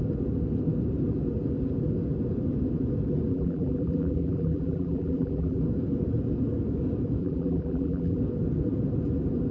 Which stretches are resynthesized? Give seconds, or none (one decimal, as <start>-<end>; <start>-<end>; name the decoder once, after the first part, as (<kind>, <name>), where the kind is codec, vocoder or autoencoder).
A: 3.3-5.6 (vocoder, BigVGAN v2); 7.2-8.2